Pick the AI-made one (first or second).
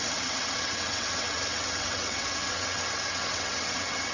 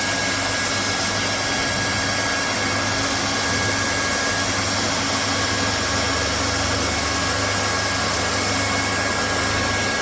first